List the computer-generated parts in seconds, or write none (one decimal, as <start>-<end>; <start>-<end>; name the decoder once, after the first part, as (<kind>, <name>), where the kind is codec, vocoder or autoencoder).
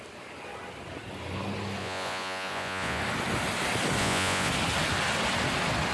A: 1.8-3.0 (vocoder, Vocos); 4.0-4.5